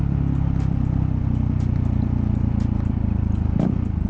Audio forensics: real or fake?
real